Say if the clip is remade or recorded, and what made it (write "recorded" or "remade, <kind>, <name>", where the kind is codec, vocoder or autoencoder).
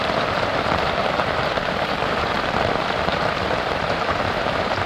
remade, vocoder, BigVGAN v2